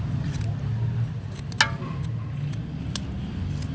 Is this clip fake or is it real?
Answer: real